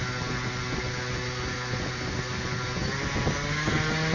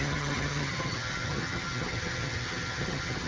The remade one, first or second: second